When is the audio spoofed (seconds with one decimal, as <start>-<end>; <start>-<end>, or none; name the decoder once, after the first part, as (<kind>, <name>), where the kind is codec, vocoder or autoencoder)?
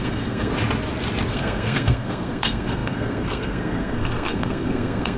0.0-0.5 (codec, SNAC); 1.3-5.2